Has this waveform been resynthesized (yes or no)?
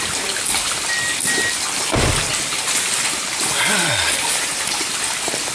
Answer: no